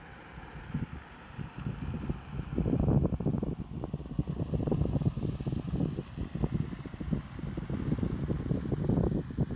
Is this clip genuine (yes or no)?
yes